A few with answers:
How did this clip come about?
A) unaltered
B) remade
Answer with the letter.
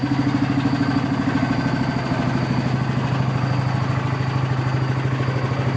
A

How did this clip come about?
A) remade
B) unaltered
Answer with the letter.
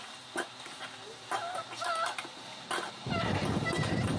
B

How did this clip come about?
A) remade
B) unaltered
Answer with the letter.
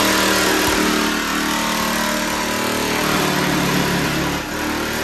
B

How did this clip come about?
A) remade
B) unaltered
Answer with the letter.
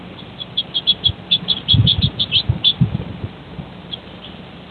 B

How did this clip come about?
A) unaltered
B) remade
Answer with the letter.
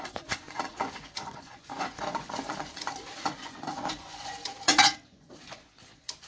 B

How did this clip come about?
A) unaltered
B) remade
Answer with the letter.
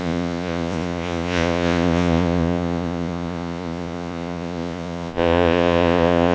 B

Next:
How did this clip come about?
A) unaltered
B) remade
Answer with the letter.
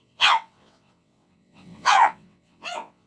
B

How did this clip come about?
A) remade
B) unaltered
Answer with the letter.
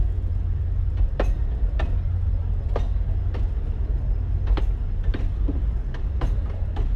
B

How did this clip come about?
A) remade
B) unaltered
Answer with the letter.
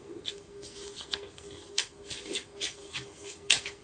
A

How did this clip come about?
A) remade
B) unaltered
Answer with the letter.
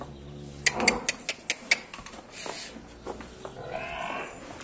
B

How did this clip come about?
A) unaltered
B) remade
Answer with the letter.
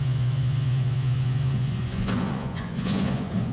B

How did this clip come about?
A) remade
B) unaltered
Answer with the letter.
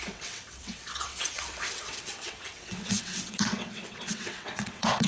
A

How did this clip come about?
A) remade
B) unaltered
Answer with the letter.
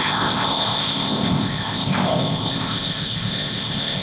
A